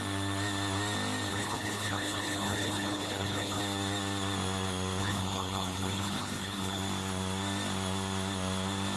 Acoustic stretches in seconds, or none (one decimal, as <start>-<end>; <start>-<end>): 0.0-1.3; 3.6-5.0; 6.8-9.0